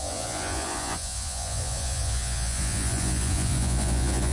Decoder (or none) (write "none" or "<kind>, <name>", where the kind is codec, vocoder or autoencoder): vocoder, Vocos